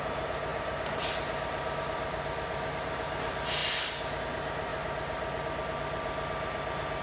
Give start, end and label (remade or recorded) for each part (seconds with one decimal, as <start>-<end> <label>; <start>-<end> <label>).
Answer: 0.0-7.0 recorded